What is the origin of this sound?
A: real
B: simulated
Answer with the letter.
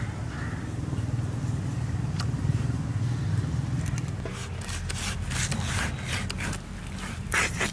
A